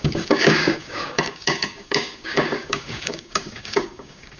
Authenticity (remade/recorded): remade